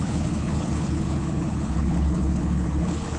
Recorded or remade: remade